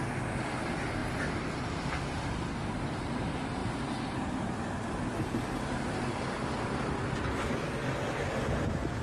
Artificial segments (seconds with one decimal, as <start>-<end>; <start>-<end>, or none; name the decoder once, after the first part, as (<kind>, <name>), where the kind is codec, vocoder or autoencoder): none